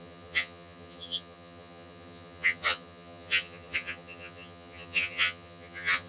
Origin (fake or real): fake